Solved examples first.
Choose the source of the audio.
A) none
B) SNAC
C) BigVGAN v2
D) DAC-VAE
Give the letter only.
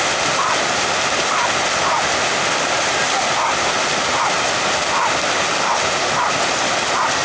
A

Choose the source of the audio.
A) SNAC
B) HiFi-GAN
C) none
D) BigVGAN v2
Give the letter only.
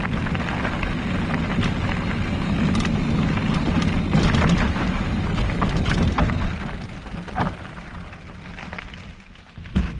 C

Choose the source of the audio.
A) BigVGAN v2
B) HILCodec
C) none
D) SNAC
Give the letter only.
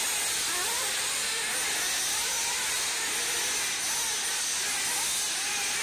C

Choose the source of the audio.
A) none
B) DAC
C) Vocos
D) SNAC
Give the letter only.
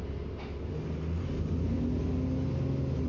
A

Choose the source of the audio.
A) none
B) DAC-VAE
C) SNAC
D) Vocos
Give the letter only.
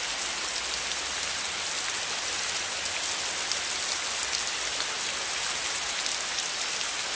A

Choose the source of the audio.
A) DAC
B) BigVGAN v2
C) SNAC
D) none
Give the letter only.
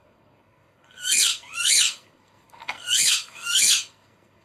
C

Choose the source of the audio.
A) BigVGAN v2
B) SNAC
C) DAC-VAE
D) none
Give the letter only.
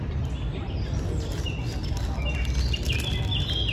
D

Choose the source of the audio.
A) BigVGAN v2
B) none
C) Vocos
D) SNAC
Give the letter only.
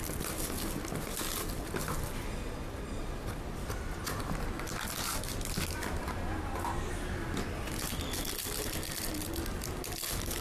B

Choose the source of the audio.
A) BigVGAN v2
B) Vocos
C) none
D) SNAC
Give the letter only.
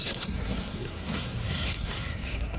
D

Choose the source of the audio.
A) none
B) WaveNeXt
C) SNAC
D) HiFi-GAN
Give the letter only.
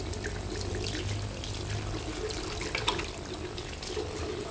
A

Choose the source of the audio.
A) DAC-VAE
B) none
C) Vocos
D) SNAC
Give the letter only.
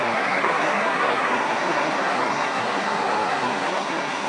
D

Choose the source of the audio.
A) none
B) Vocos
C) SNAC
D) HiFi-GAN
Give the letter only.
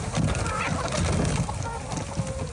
A